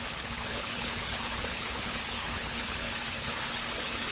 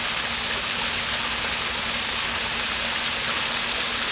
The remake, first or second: first